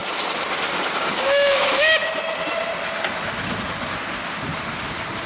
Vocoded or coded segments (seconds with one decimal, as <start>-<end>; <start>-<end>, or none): none